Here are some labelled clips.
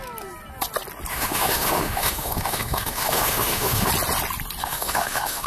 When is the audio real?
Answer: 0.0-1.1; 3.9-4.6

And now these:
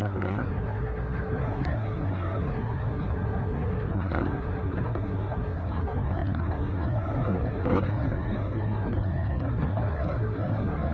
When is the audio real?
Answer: none